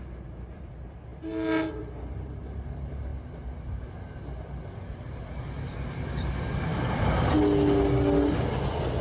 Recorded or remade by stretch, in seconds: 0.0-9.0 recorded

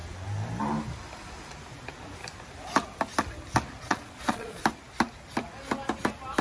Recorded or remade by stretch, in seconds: 0.0-3.8 recorded; 3.8-4.6 remade; 4.6-6.4 recorded

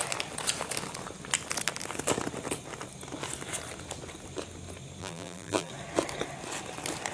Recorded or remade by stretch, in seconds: 0.0-5.0 recorded; 5.0-5.7 remade; 5.7-7.1 recorded

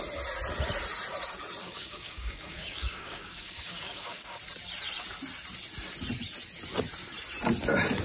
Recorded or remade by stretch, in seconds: 0.0-1.6 recorded; 1.6-4.4 remade; 4.4-8.0 recorded

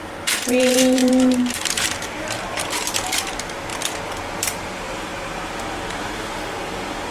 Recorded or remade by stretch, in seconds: 0.0-3.7 remade; 3.7-4.4 recorded; 4.4-5.1 remade; 5.1-5.9 recorded; 5.9-7.1 remade

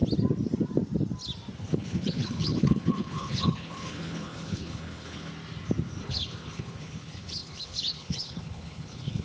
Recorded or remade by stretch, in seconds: 0.0-1.6 recorded; 1.6-5.3 remade; 5.3-6.0 recorded; 6.0-9.2 remade

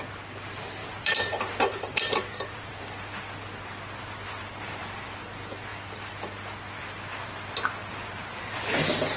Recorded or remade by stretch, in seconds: 0.0-0.8 recorded; 0.8-2.7 remade; 2.7-7.8 recorded; 7.8-9.2 remade

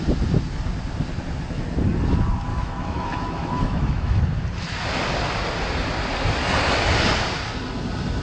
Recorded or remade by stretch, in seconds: 0.0-2.5 recorded; 2.5-4.2 remade; 4.2-8.2 recorded